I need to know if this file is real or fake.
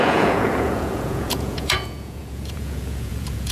fake